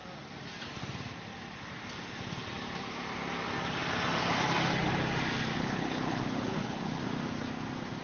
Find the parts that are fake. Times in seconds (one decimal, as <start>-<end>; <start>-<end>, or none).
5.5-7.0